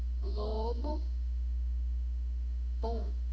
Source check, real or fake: fake